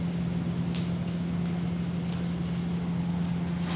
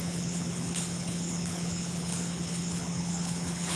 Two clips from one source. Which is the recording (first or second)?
first